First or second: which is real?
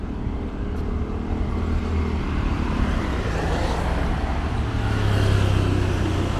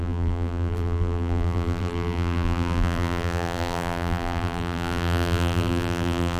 first